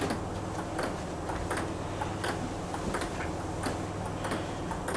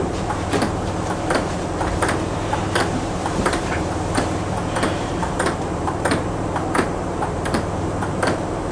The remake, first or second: second